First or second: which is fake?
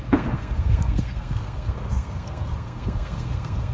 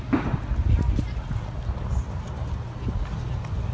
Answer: first